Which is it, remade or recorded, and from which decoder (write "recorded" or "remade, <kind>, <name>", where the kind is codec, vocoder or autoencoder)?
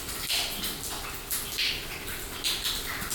recorded